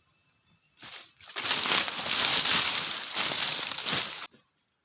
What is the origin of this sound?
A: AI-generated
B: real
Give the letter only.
B